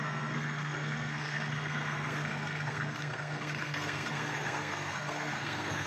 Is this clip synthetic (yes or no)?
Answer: yes